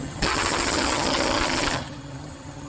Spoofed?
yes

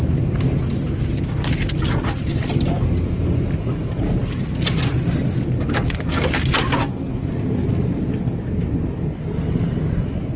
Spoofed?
no